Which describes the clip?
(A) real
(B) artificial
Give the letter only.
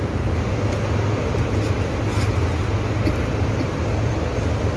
A